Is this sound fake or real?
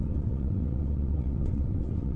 fake